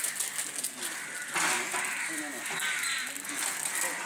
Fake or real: real